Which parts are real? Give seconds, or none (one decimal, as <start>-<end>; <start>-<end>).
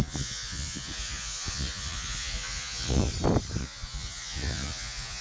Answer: 3.1-3.6